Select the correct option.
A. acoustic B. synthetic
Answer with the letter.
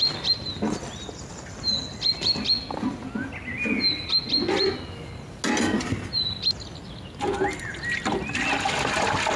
A